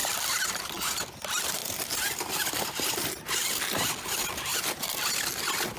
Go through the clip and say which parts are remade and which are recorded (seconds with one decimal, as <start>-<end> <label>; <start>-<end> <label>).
0.0-1.6 recorded; 1.6-3.1 remade; 3.1-5.8 recorded